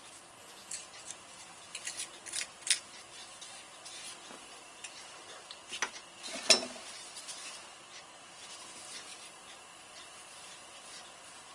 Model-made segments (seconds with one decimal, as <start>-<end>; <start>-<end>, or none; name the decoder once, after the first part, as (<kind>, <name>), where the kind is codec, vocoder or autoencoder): none